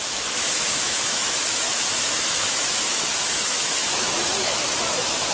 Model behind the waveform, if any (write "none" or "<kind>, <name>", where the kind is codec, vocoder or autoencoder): autoencoder, DAC-VAE